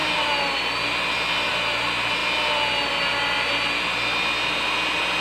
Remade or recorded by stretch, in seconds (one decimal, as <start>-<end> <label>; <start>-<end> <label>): 0.0-5.2 recorded